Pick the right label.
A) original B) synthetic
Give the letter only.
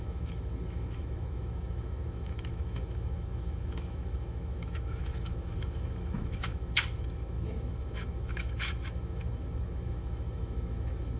B